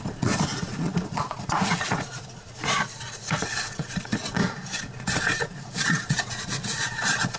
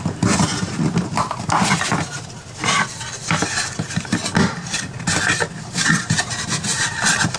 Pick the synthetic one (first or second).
first